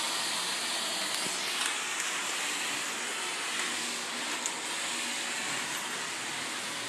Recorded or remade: recorded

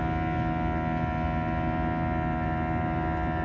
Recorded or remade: recorded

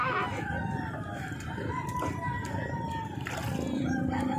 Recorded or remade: recorded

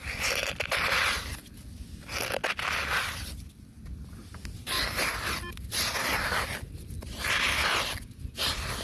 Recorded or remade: recorded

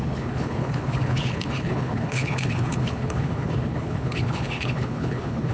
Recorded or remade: remade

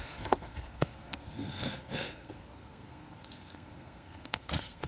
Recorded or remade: remade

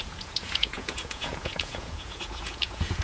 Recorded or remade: remade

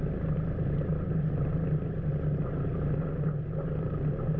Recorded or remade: recorded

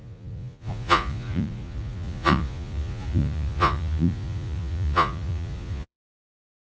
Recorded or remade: remade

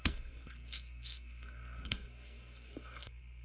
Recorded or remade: remade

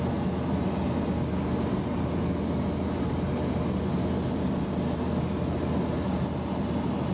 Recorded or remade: recorded